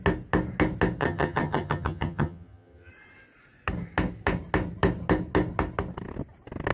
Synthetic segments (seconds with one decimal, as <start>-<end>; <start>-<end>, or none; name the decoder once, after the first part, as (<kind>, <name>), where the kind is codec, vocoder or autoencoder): 1.0-2.9 (vocoder, HiFi-GAN)